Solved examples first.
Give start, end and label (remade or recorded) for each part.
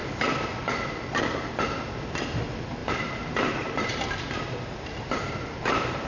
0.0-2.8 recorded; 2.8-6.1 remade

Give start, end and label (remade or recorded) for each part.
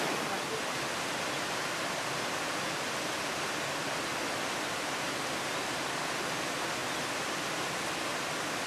0.0-8.7 recorded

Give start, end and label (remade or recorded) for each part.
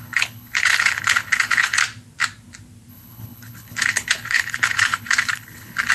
0.0-1.8 remade; 1.8-2.9 recorded; 2.9-5.9 remade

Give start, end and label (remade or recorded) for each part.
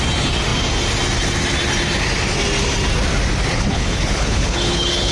0.0-3.5 recorded; 3.5-5.1 remade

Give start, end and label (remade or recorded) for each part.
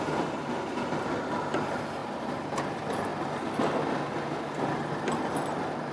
0.0-2.0 recorded; 2.0-2.7 remade; 2.7-5.9 recorded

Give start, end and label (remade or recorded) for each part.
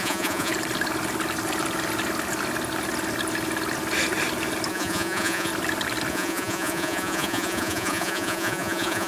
0.0-0.5 remade; 0.5-4.7 recorded; 4.7-5.5 remade; 5.5-6.1 recorded; 6.1-9.1 remade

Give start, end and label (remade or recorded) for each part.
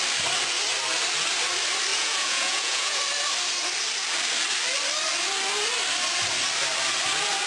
0.0-1.9 recorded; 1.9-3.0 remade; 3.0-7.5 recorded